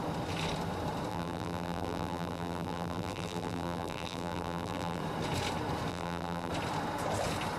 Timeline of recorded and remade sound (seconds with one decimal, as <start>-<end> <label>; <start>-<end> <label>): 0.0-1.1 recorded; 1.1-5.0 remade; 5.0-5.9 recorded; 5.9-6.5 remade; 6.5-7.6 recorded